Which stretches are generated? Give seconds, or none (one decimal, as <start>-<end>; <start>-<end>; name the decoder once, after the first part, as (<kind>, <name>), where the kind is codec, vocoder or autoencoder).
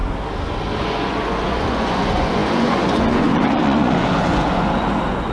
0.8-5.3 (vocoder, Vocos)